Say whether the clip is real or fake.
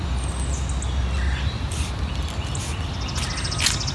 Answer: real